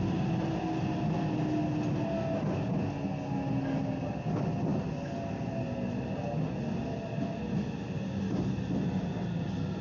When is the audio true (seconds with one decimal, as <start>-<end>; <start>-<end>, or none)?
0.0-9.8